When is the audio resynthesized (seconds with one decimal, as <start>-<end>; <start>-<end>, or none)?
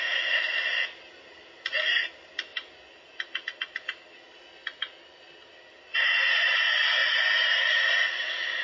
none